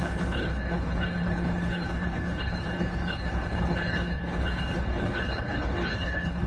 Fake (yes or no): yes